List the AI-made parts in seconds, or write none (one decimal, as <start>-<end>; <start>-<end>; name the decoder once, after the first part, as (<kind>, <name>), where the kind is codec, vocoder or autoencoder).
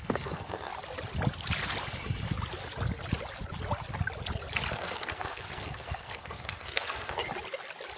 0.0-0.7 (codec, SNAC); 4.7-7.2